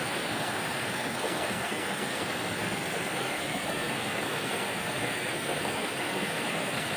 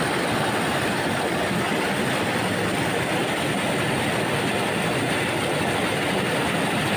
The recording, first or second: second